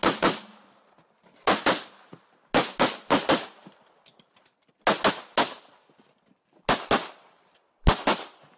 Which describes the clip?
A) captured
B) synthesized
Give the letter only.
A